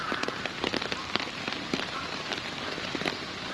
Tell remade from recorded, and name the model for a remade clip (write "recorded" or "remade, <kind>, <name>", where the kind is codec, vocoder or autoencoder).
remade, vocoder, BigVGAN v2